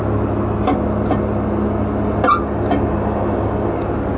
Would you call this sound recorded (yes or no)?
yes